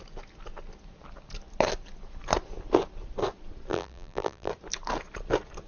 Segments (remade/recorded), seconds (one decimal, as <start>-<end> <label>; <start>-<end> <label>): 0.0-3.7 recorded; 3.7-4.5 remade; 4.5-5.7 recorded